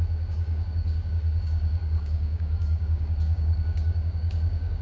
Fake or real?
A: fake